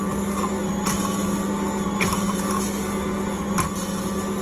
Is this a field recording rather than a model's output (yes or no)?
yes